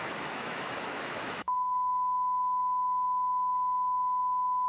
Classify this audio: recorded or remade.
remade